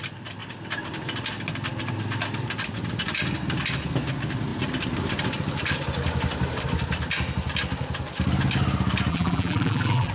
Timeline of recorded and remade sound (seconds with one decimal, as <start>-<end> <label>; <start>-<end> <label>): 0.0-9.1 recorded; 9.1-10.1 remade